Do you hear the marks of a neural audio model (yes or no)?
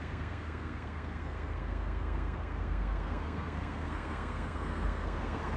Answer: yes